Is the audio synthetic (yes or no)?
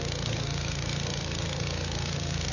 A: yes